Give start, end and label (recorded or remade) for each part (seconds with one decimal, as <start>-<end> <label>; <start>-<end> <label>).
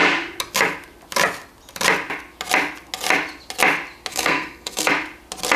0.0-4.1 recorded; 4.1-4.9 remade; 4.9-5.6 recorded